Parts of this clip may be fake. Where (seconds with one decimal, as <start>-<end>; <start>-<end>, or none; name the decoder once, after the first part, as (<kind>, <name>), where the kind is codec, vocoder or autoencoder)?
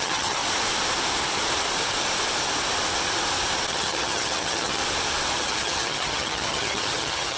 0.0-0.4 (vocoder, HiFi-GAN); 3.7-4.8; 5.4-7.4